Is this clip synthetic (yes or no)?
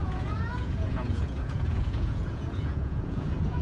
yes